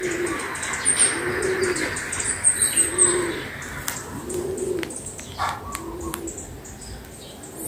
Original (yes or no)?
yes